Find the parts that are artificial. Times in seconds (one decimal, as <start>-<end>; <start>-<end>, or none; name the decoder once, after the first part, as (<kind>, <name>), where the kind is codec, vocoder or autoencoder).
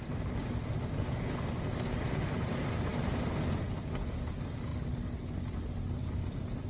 none